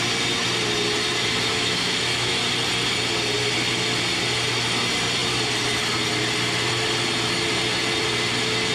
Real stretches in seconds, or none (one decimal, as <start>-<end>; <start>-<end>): 0.0-1.5; 2.3-8.7